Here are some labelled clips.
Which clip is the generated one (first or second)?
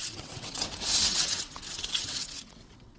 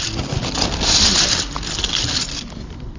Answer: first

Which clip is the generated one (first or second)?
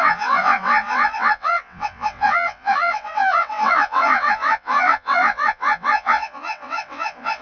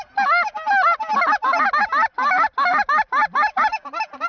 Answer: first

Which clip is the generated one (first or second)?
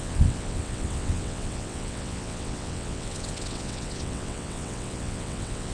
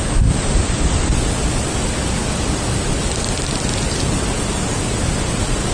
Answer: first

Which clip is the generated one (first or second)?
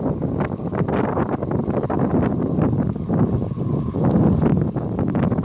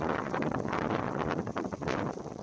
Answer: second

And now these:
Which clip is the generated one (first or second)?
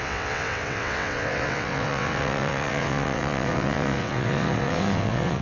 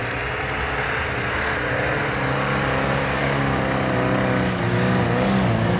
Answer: first